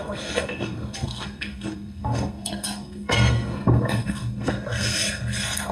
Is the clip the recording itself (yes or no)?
no